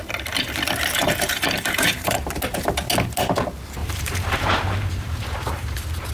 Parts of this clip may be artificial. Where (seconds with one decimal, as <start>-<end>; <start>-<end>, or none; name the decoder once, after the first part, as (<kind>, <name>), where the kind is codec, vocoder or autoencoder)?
1.0-2.2 (vocoder, BigVGAN v2); 3.8-6.1